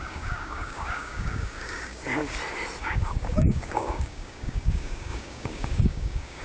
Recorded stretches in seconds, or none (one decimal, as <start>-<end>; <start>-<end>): 2.2-2.8